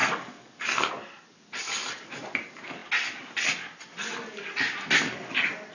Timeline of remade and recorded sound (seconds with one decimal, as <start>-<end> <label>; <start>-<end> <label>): 0.0-0.9 remade; 0.9-5.7 recorded